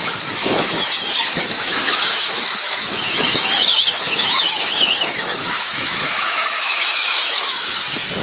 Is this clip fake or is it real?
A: fake